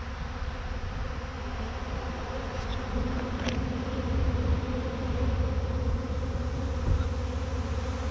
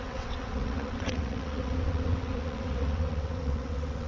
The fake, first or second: second